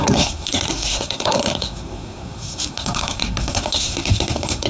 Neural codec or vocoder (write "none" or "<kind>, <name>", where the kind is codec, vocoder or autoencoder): codec, SNAC